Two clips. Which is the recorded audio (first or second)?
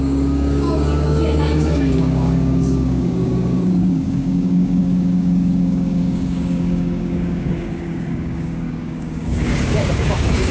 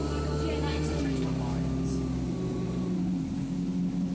second